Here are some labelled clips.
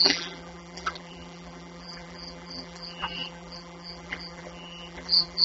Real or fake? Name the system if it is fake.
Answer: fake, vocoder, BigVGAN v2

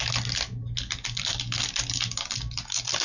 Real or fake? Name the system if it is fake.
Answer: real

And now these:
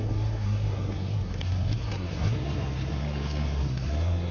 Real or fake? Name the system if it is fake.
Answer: fake, codec, SNAC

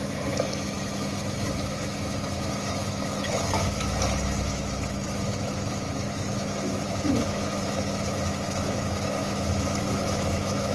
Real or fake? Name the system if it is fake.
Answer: fake, autoencoder, DAC-VAE